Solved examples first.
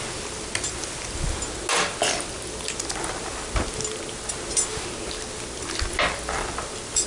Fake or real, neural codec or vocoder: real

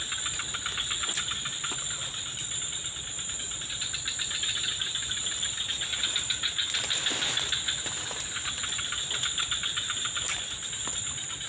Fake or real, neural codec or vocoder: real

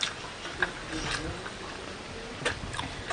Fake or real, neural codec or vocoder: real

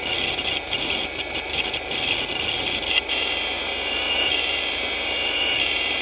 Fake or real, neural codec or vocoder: real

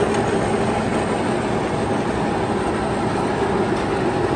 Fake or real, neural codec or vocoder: real